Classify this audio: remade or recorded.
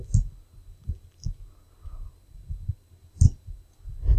recorded